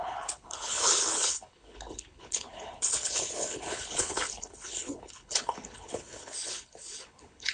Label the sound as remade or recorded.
remade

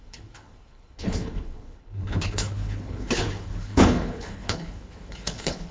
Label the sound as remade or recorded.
remade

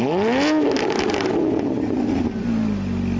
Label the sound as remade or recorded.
recorded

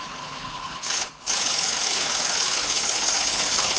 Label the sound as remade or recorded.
remade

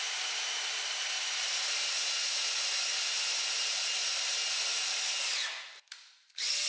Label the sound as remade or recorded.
recorded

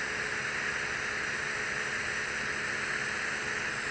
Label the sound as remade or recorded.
recorded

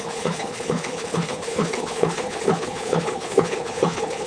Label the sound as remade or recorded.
remade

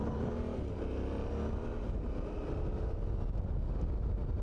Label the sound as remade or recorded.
recorded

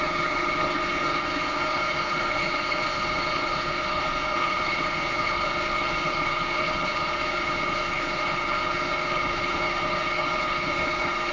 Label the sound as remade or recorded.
remade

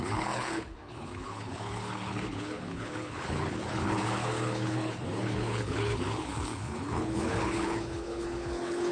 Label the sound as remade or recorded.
remade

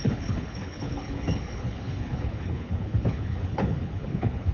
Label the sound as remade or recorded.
remade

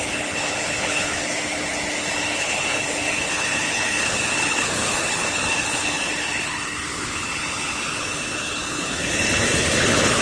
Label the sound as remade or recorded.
remade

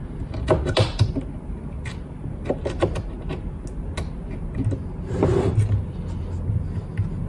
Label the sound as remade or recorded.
recorded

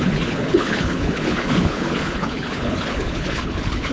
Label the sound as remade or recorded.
remade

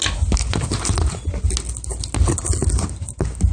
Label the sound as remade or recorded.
recorded